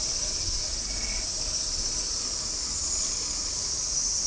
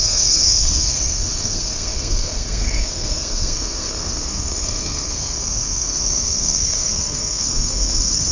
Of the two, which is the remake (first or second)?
second